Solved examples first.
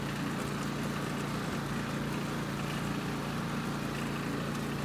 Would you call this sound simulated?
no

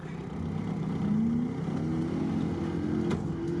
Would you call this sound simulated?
no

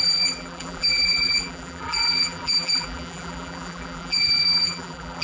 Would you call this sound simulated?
yes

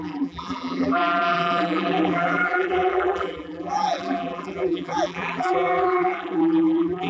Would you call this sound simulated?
yes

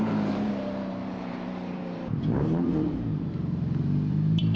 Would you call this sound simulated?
yes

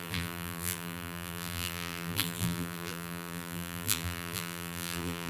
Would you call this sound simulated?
yes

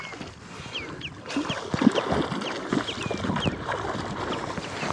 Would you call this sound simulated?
no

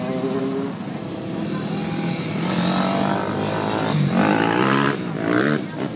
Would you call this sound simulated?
no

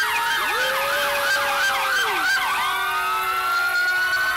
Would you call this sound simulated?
no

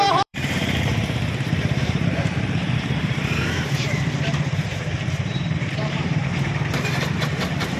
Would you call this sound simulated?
yes